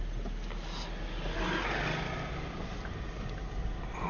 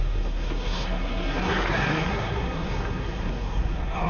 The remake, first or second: second